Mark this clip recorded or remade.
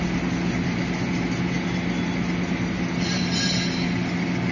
recorded